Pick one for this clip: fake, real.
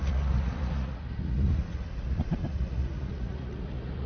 fake